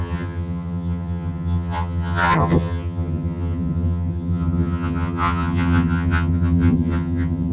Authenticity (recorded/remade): remade